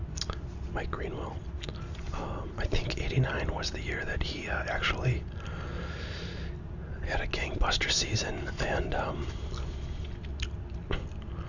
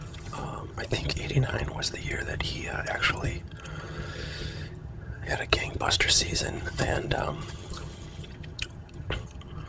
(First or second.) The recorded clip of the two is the first